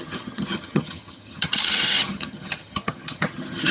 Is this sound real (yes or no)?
no